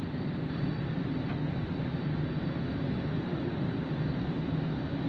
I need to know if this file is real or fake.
real